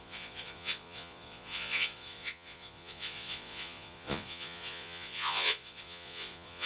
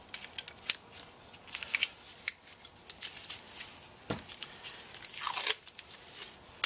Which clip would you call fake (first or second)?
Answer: first